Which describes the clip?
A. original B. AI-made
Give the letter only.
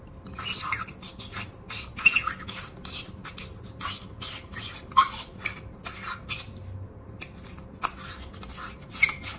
A